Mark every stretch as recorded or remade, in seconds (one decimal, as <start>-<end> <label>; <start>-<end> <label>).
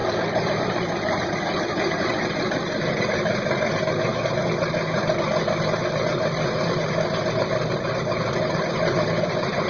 0.0-4.1 remade; 4.1-5.9 recorded; 5.9-9.7 remade